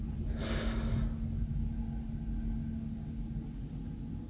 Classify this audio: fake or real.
real